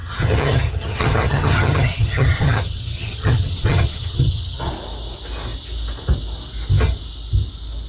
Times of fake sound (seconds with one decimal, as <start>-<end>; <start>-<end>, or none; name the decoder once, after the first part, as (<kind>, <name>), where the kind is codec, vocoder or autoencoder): 0.0-4.7 (vocoder, HiFi-GAN)